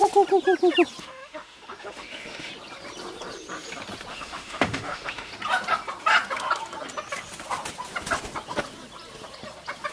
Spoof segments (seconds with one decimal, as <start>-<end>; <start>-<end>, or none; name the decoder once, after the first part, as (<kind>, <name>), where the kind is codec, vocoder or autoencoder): 1.0-2.5 (autoencoder, DAC-VAE); 4.1-5.3

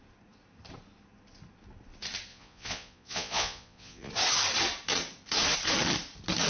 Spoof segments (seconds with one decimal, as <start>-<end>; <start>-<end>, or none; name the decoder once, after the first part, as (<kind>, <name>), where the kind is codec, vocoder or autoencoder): 2.3-4.1 (vocoder, Vocos)

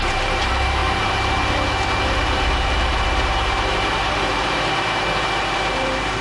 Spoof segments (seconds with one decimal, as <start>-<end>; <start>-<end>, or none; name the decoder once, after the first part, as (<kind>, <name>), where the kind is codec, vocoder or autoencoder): 0.0-6.2 (vocoder, BigVGAN v2)

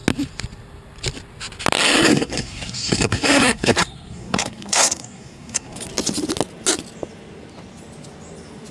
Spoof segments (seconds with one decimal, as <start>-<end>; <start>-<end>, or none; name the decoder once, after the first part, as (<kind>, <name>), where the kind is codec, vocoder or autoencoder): 2.1-5.8 (codec, SNAC)

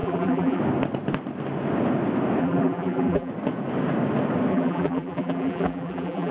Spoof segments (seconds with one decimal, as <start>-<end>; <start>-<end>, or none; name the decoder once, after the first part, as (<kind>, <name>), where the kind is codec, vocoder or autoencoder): 0.0-0.6 (vocoder, BigVGAN v2); 2.4-3.3; 4.5-6.3

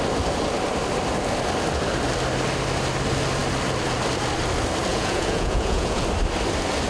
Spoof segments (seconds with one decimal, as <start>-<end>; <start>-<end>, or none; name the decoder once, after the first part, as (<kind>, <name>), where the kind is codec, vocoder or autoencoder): 4.9-6.0 (vocoder, Vocos)